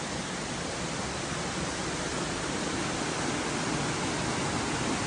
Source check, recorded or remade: remade